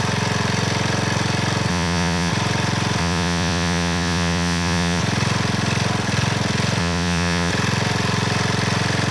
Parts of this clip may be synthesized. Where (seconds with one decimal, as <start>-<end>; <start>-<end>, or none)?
1.7-2.3; 3.0-5.0; 6.8-7.5